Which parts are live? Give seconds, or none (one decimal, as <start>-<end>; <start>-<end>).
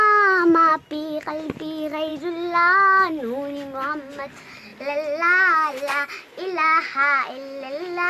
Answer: 0.0-8.1